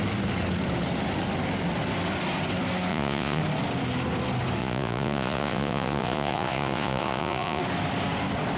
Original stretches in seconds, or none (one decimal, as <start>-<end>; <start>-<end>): 0.0-2.9; 3.4-4.6; 7.6-8.6